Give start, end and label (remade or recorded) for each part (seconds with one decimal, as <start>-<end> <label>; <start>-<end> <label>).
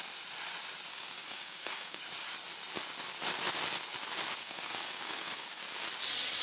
0.0-0.9 recorded; 0.9-2.0 remade; 2.0-4.4 recorded; 4.4-5.6 remade; 5.6-6.4 recorded